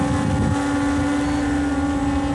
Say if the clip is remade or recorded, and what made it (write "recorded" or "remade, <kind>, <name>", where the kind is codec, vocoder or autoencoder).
recorded